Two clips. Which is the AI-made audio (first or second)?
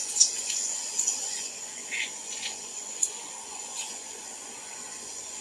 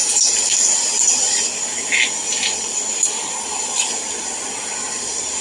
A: first